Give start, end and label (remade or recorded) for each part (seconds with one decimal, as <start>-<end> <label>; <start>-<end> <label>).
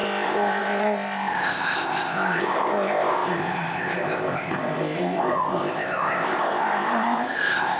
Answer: 0.0-7.8 remade